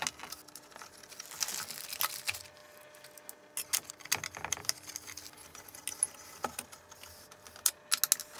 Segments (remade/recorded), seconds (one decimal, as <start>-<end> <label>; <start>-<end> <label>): 0.0-8.4 recorded